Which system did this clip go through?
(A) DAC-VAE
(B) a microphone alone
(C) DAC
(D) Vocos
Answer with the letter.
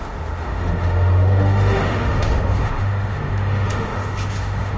A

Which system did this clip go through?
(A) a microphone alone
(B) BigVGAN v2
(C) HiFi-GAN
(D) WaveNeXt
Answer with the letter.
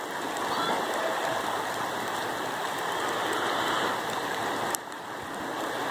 A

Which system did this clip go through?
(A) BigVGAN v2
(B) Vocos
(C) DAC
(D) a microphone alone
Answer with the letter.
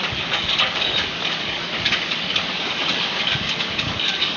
C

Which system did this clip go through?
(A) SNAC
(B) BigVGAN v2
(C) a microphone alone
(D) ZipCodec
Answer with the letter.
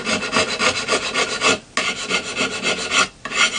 C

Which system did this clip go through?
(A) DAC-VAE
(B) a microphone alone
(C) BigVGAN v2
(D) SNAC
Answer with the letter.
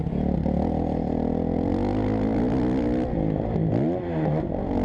B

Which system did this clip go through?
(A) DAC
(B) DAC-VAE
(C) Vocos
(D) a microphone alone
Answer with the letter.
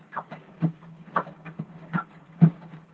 A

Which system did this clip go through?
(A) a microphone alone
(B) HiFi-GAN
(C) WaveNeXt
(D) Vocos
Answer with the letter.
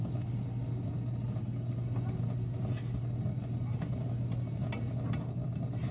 A